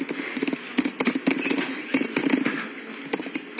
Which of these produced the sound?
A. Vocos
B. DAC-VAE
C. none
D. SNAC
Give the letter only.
C